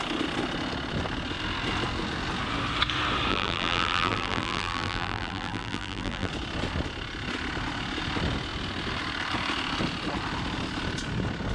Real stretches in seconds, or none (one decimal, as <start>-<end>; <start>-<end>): 0.0-3.3; 6.3-11.5